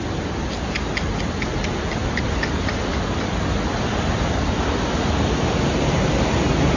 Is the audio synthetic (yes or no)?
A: no